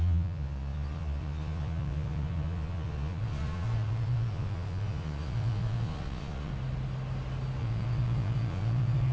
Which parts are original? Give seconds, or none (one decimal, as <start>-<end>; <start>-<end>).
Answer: 6.5-7.6